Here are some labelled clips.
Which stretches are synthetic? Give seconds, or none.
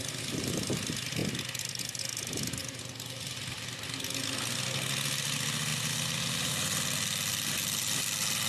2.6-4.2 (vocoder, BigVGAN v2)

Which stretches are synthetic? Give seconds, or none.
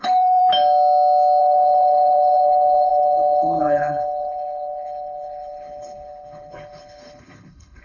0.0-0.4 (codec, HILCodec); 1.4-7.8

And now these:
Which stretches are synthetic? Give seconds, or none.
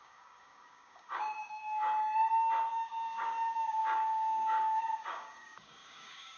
0.0-1.8 (codec, DAC); 2.7-6.4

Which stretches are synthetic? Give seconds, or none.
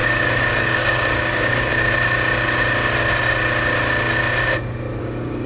0.0-1.7 (codec, DAC); 5.0-5.5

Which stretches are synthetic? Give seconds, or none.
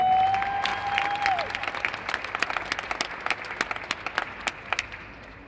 none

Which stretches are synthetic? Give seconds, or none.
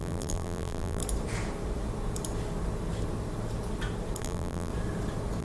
0.0-1.0 (vocoder, BigVGAN v2); 4.2-4.7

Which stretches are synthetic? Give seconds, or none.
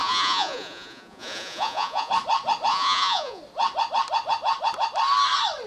0.0-2.1 (vocoder, Vocos); 2.7-3.4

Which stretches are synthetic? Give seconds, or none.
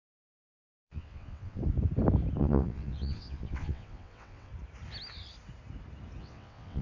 0.0-1.6 (vocoder, WaveNeXt); 2.4-4.5; 6.2-6.8